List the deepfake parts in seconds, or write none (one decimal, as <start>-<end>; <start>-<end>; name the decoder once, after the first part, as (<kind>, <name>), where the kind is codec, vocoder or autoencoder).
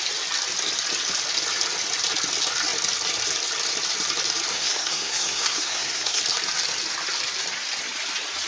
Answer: 4.5-6.2 (codec, SNAC)